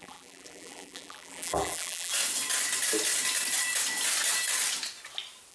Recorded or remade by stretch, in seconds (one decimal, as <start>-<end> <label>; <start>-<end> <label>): 0.0-2.1 remade; 2.1-5.5 recorded